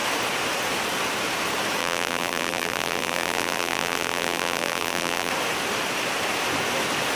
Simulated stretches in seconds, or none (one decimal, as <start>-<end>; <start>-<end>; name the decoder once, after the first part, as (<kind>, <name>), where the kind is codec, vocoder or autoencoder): 1.8-5.3 (vocoder, BigVGAN v2)